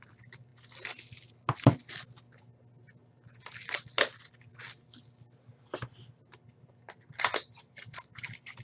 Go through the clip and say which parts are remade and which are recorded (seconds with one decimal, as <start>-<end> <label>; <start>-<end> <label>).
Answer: 0.0-8.6 recorded